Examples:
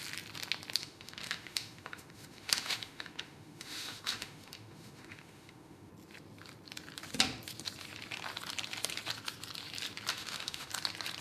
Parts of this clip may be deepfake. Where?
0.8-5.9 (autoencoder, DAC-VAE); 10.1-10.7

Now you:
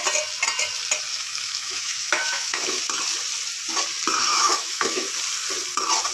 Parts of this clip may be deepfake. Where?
1.1-2.8 (autoencoder, DAC-VAE); 4.3-5.1

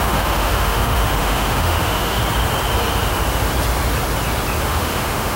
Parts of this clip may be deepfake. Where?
0.0-2.2 (autoencoder, DAC-VAE); 4.6-5.4

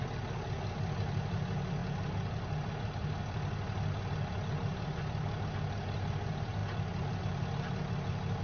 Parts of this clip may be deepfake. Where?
none

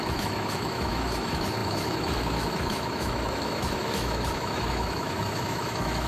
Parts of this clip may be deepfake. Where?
0.0-6.1 (autoencoder, DAC-VAE)

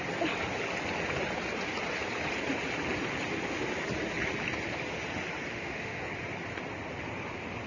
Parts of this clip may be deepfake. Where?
5.5-6.0 (autoencoder, DAC-VAE)

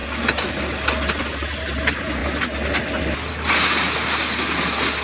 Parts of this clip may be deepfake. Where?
none